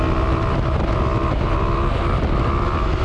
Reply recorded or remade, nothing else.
recorded